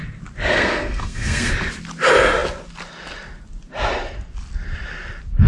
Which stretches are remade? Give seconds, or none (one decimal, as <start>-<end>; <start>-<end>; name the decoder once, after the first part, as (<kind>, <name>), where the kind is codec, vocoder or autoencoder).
0.5-1.5 (codec, SNAC)